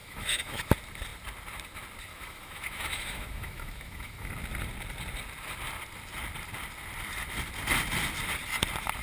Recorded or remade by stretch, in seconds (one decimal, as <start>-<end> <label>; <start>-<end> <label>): 0.0-0.7 remade; 0.7-2.1 recorded; 2.1-4.3 remade; 4.3-9.0 recorded